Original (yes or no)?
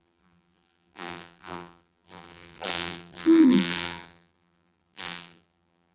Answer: no